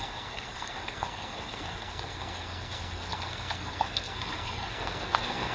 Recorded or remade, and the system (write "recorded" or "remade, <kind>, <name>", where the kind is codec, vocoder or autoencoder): remade, codec, SNAC